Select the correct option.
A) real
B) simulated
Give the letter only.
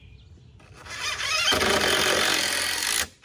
A